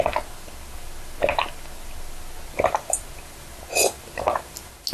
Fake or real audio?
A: real